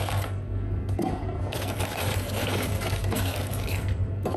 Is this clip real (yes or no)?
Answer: no